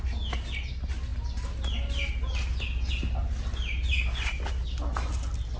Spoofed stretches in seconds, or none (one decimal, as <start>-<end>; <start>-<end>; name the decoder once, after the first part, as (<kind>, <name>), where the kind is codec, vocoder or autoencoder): none